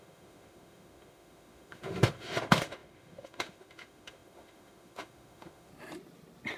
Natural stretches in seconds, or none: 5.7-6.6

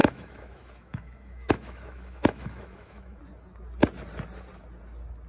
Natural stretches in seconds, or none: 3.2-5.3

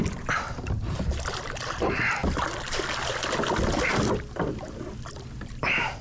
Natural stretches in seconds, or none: 2.2-6.0

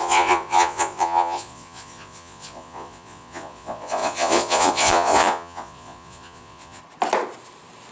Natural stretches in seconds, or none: 6.8-7.9

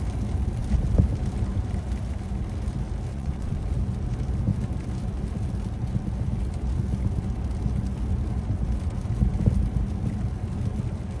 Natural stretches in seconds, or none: 0.0-3.1; 3.6-11.2

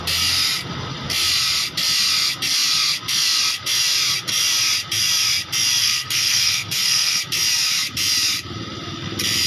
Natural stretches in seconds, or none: 0.0-5.8; 7.2-9.5

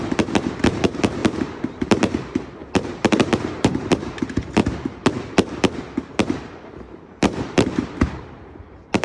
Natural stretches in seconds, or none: 4.6-6.1

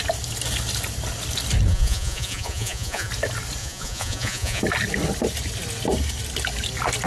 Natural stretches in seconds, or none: 0.0-1.7; 3.1-3.6; 4.6-7.1